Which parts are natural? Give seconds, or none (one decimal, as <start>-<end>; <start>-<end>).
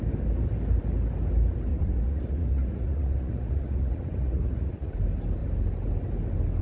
0.0-1.7; 4.9-6.6